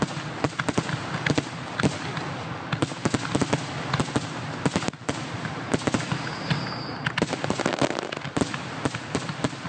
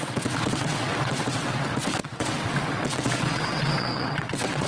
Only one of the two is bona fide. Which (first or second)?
first